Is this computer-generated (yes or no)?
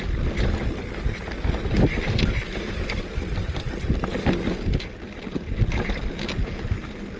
no